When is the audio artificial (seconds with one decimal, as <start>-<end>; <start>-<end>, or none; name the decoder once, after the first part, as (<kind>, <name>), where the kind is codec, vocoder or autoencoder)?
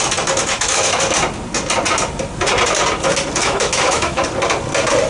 0.4-1.0 (autoencoder, DAC-VAE); 3.4-4.2